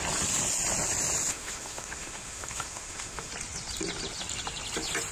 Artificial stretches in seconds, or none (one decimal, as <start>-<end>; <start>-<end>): 1.3-3.3